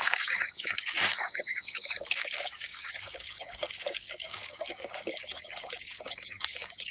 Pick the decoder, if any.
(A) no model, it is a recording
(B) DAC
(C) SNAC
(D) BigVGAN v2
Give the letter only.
B